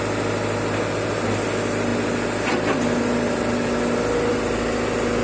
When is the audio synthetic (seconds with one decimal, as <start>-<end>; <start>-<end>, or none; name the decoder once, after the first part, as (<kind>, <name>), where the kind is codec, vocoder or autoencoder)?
none